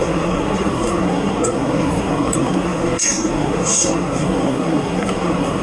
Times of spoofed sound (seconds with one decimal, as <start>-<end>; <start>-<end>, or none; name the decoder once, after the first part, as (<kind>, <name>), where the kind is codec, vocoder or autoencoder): 0.0-5.6 (codec, SNAC)